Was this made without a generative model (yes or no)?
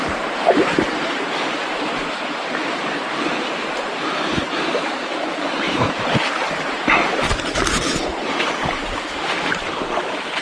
no